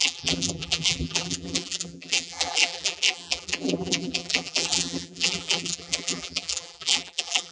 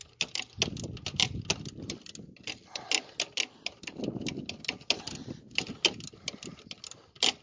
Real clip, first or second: second